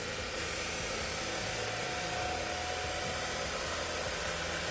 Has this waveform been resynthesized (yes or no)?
no